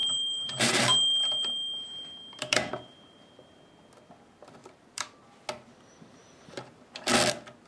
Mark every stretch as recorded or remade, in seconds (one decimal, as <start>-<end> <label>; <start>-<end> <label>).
0.0-3.6 remade; 3.6-4.6 recorded; 4.6-5.2 remade; 5.2-6.1 recorded; 6.1-7.1 remade; 7.1-7.7 recorded